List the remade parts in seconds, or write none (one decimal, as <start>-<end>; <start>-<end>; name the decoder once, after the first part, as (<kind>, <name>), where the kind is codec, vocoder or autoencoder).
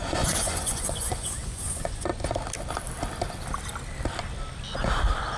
0.0-2.1 (vocoder, Vocos)